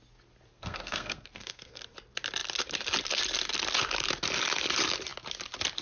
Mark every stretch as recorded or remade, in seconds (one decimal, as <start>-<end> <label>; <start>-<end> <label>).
0.0-0.5 recorded; 0.5-1.8 remade; 1.8-5.8 recorded